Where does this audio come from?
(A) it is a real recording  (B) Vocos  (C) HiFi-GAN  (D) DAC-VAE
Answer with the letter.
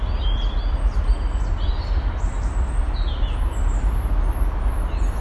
A